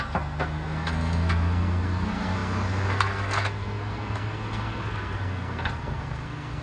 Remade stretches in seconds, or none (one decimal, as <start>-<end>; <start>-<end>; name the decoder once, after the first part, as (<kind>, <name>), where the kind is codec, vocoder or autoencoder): 0.0-6.6 (codec, SNAC)